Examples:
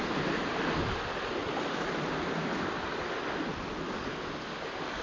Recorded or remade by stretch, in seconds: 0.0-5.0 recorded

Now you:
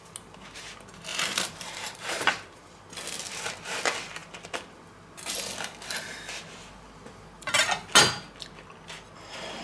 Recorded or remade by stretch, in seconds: 0.0-1.1 recorded; 1.1-2.7 remade; 2.7-9.6 recorded

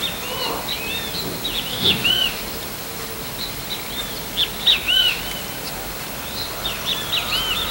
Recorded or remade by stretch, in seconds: 0.0-1.7 recorded; 1.7-2.4 remade; 2.4-4.7 recorded; 4.7-5.2 remade; 5.2-7.7 recorded